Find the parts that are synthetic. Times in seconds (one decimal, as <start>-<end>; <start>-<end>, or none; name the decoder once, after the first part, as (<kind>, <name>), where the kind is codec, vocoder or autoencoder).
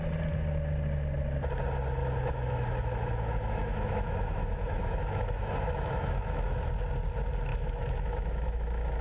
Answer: 2.0-6.7 (autoencoder, DAC-VAE); 7.5-9.0